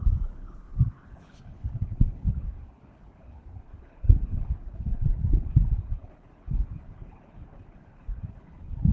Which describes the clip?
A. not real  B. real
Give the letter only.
A